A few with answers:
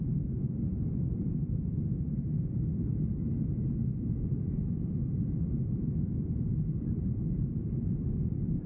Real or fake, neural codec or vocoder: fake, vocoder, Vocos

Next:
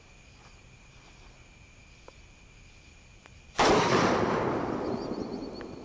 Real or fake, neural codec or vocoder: real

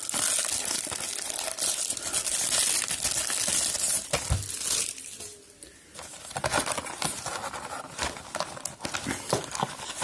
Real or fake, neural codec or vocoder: real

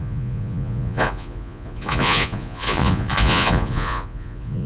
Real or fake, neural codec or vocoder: fake, vocoder, Vocos